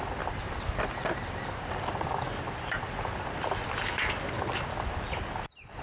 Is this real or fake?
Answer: real